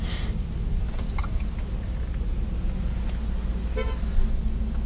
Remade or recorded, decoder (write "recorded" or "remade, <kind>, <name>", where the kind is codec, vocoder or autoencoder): recorded